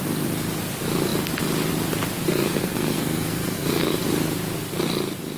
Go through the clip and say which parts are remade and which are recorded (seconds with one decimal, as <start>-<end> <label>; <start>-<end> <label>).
0.0-2.3 recorded; 2.3-4.0 remade; 4.0-5.4 recorded

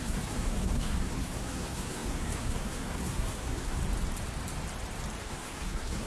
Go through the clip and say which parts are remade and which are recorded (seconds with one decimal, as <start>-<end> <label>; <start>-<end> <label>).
0.0-3.8 remade; 3.8-5.2 recorded; 5.2-6.1 remade